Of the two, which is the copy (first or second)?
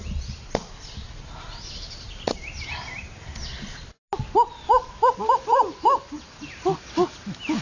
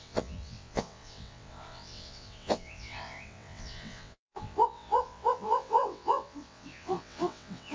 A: second